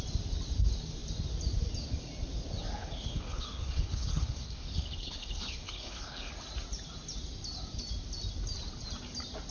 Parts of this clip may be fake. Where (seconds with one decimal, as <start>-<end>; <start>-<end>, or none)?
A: 2.8-6.3